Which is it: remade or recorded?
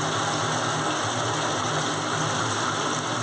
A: recorded